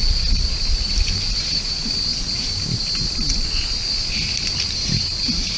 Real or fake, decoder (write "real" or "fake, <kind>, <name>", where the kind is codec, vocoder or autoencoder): real